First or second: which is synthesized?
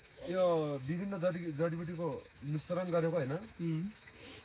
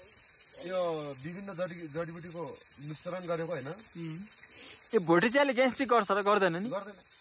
first